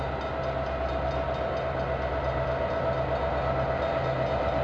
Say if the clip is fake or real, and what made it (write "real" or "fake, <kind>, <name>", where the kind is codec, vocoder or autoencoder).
real